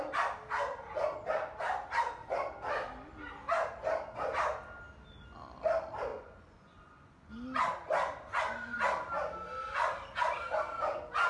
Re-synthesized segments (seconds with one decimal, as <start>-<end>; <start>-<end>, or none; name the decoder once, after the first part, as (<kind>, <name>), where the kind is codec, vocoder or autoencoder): 6.1-7.3 (vocoder, Vocos)